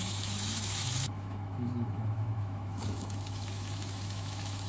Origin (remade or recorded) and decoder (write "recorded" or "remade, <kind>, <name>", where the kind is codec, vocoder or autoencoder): remade, autoencoder, DAC-VAE